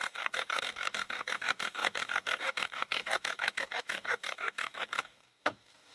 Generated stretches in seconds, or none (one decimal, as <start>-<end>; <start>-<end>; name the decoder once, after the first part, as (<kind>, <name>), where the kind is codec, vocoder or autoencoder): 0.0-5.9 (codec, DAC)